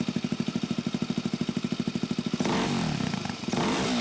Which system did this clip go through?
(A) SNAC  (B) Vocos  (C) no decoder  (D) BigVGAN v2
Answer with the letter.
D